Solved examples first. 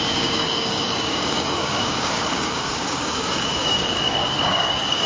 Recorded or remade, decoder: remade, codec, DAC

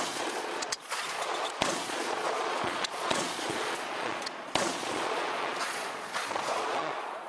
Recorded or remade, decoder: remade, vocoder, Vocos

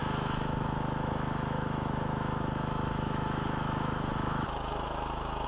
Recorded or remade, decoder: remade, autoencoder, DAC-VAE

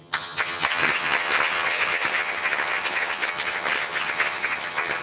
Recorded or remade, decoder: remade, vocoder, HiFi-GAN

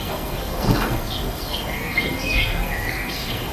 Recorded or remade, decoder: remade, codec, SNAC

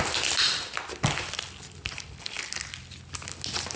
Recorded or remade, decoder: recorded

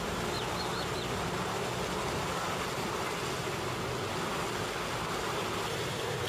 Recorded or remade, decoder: recorded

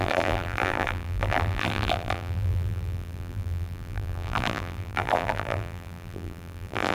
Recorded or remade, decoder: remade, vocoder, BigVGAN v2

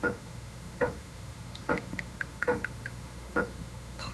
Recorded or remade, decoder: remade, autoencoder, DAC-VAE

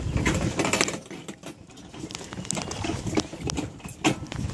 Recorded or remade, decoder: recorded